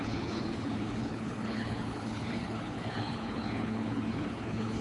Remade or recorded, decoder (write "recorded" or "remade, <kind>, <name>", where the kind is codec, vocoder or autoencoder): remade, codec, HILCodec